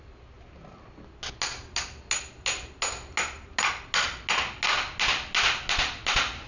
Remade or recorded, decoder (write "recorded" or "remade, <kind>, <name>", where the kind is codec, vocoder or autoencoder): recorded